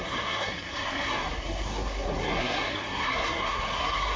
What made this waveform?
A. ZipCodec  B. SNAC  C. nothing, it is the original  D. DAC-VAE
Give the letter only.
B